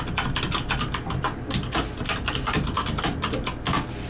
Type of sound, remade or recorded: recorded